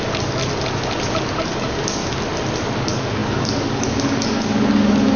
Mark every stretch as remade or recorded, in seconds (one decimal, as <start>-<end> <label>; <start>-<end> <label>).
0.0-0.4 remade; 0.4-1.3 recorded; 1.3-2.0 remade; 2.0-2.8 recorded; 2.8-5.2 remade